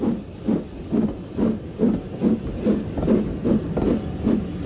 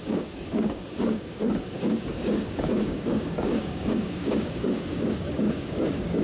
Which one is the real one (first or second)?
first